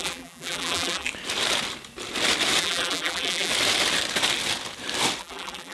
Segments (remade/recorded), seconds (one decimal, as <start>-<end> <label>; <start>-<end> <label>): 0.0-1.1 remade; 1.1-2.6 recorded; 2.6-3.5 remade; 3.5-5.2 recorded; 5.2-5.7 remade